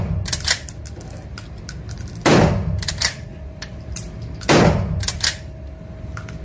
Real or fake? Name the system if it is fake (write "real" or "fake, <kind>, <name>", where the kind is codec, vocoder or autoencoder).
real